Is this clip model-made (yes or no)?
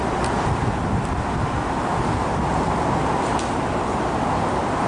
no